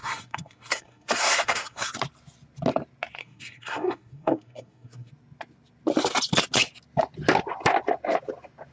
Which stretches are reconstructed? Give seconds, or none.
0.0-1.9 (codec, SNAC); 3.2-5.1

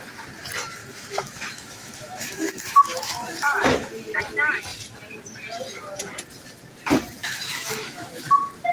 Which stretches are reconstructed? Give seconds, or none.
0.8-4.2 (autoencoder, DAC-VAE); 7.2-8.2

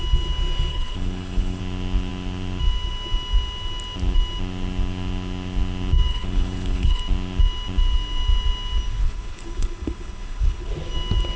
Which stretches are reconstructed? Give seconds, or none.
0.7-1.6 (codec, HILCodec); 6.1-7.0; 9.0-10.7

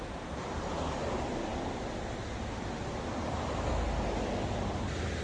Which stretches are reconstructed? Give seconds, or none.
none

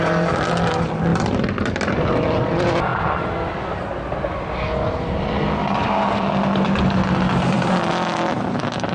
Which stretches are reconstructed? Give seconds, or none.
none

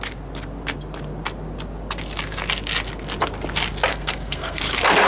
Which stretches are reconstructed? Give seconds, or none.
3.9-4.6 (codec, SNAC)